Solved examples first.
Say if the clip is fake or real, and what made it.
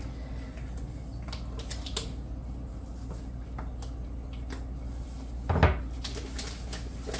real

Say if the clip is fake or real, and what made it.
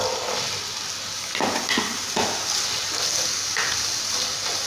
real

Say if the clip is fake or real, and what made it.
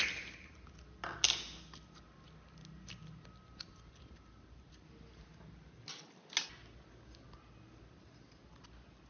real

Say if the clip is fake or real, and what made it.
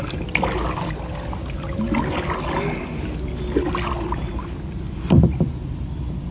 real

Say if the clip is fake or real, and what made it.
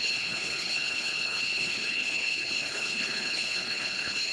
fake, codec, HILCodec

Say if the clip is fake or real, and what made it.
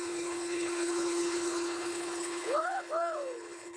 fake, codec, HILCodec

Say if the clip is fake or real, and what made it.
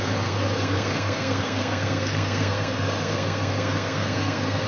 fake, codec, SNAC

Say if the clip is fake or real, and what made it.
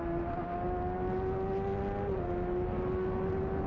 real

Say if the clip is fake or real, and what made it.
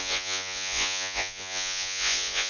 fake, vocoder, Vocos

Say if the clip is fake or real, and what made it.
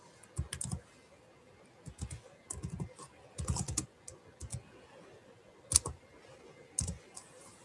real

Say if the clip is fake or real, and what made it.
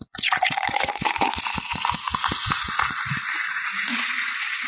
fake, vocoder, Vocos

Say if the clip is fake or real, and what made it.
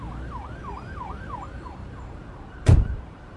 fake, vocoder, BigVGAN v2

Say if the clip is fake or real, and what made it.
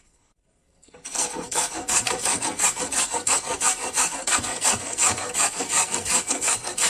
fake, codec, SNAC